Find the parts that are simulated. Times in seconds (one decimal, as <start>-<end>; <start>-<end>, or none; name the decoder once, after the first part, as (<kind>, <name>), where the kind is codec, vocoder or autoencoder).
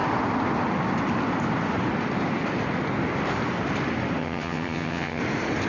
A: 4.2-5.2 (vocoder, HiFi-GAN)